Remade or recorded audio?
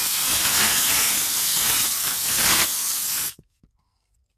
remade